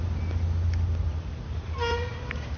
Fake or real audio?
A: real